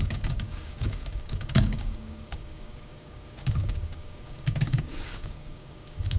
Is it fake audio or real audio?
fake